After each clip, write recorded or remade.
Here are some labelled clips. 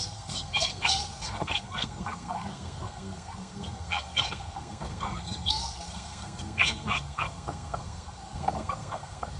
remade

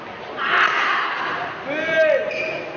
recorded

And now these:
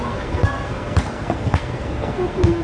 remade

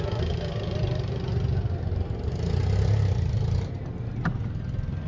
recorded